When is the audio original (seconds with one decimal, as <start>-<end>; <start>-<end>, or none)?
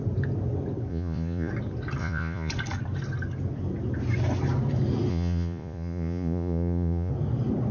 0.0-0.9; 1.5-2.0; 2.5-5.1; 7.1-7.7